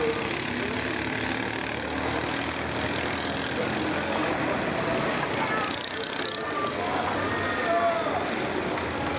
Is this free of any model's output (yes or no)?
yes